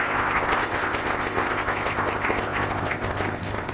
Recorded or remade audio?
remade